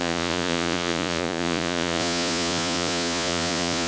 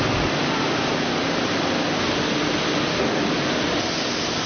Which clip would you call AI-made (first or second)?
first